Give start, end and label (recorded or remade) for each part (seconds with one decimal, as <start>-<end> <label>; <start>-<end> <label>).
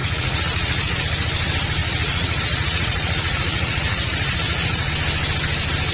0.0-1.0 remade; 1.0-1.8 recorded; 1.8-4.9 remade; 4.9-5.9 recorded